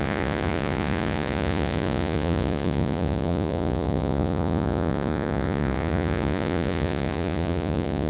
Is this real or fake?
fake